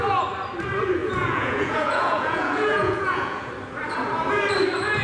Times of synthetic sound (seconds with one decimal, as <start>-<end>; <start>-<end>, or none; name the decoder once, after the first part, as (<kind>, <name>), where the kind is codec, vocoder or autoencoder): 1.0-3.5 (vocoder, Vocos)